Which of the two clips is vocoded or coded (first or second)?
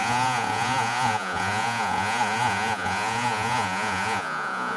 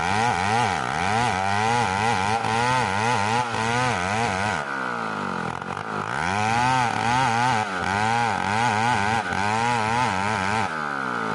first